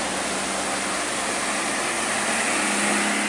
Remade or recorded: recorded